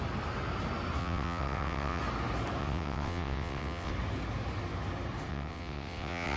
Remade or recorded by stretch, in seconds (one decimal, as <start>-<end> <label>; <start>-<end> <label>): 0.0-1.0 recorded; 1.0-2.0 remade; 2.0-2.6 recorded; 2.6-3.9 remade; 3.9-5.3 recorded; 5.3-6.4 remade